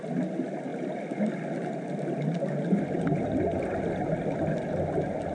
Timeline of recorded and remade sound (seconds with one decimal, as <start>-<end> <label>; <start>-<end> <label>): 0.0-5.3 recorded